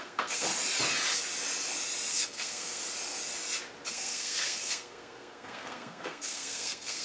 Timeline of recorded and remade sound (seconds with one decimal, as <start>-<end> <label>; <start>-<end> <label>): 0.0-0.5 remade; 0.5-2.1 recorded; 2.1-2.8 remade; 2.8-3.9 recorded; 3.9-7.0 remade